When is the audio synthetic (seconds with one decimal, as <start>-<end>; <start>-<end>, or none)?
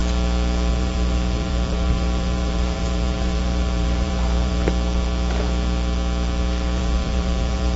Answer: 0.7-4.7; 6.8-7.8